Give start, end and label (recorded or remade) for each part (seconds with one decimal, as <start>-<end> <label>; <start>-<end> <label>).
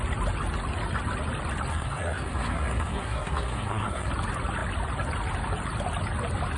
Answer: 0.0-1.7 recorded; 1.7-4.1 remade; 4.1-6.6 recorded